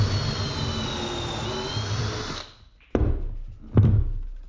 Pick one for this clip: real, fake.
real